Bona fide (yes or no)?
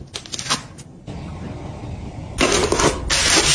yes